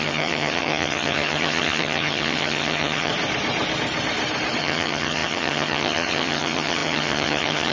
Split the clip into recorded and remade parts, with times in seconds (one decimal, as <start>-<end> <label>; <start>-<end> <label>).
0.0-3.1 remade; 3.1-4.6 recorded; 4.6-7.7 remade